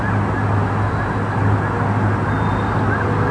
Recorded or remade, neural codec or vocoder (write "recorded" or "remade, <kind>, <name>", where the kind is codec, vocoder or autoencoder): recorded